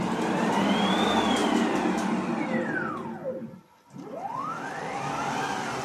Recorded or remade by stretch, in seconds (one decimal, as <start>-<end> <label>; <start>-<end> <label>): 0.0-5.8 recorded